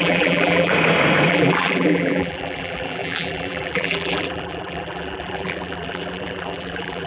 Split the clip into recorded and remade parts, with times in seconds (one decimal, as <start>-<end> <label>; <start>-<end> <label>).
0.0-0.7 remade; 0.7-1.3 recorded; 1.3-7.1 remade

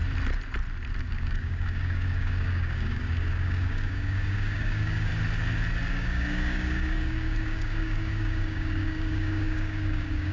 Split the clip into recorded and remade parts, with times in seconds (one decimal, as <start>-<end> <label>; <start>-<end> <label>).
0.0-1.0 recorded; 1.0-5.1 remade; 5.1-5.9 recorded; 5.9-10.3 remade

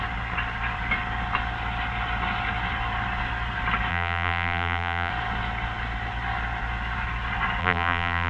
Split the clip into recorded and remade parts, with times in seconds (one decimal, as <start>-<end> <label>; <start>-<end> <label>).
0.0-3.9 recorded; 3.9-5.1 remade; 5.1-7.6 recorded; 7.6-8.3 remade

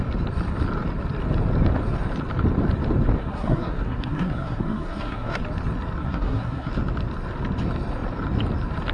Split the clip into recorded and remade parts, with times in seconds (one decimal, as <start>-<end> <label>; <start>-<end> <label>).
0.0-3.2 recorded; 3.2-5.4 remade; 5.4-6.0 recorded; 6.0-6.7 remade; 6.7-8.9 recorded